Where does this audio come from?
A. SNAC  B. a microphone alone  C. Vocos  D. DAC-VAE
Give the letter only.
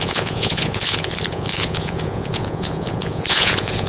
C